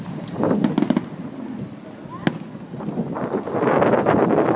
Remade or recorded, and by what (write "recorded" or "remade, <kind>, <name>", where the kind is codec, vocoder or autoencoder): recorded